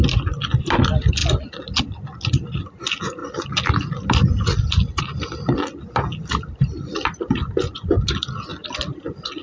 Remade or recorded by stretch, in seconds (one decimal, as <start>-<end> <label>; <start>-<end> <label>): 0.0-9.4 recorded